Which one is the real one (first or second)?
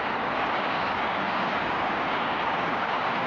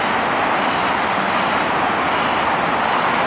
second